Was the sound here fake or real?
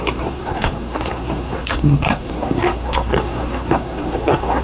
fake